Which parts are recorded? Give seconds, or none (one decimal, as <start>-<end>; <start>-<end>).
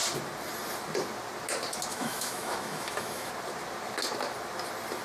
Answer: 0.0-1.9; 3.3-5.0